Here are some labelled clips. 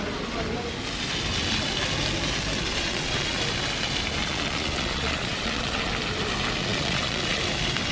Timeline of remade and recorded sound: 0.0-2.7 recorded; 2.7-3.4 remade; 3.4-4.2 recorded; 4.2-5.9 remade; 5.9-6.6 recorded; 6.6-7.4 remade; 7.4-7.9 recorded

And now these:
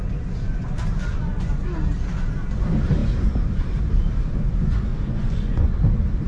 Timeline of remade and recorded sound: 0.0-1.1 recorded; 1.1-1.6 remade; 1.6-4.9 recorded; 4.9-5.7 remade; 5.7-6.3 recorded

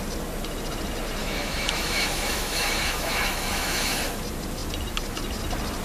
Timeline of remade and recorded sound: 0.0-1.2 recorded; 1.2-4.0 remade; 4.0-5.8 recorded

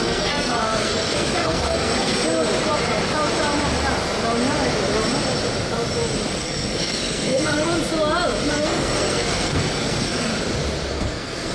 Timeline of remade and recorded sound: 0.0-2.2 remade; 2.2-6.3 recorded; 6.3-7.7 remade; 7.7-8.5 recorded; 8.5-10.3 remade; 10.3-10.9 recorded; 10.9-11.5 remade